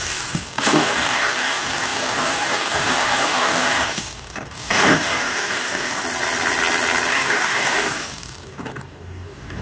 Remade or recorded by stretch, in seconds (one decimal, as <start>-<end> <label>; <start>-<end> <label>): 0.0-6.0 remade; 6.0-7.1 recorded; 7.1-9.6 remade